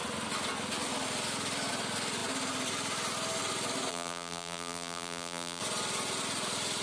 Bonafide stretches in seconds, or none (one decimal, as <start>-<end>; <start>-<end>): 0.0-3.9; 5.6-6.8